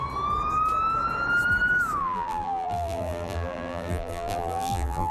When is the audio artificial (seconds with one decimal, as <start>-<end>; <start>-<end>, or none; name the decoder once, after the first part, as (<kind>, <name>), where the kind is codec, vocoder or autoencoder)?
2.0-5.1 (vocoder, BigVGAN v2)